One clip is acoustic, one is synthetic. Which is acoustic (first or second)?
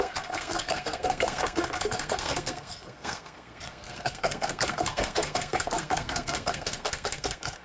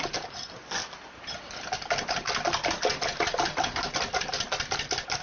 second